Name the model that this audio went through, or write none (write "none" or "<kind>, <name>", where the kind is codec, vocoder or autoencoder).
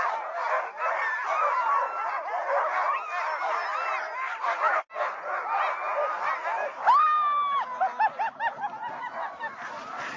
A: none